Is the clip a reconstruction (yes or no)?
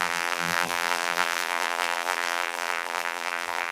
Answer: yes